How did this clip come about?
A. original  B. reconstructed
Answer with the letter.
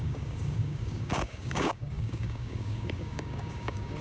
B